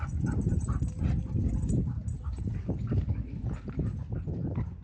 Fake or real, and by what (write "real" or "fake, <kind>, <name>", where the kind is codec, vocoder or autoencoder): real